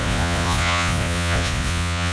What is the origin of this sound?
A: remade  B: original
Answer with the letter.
A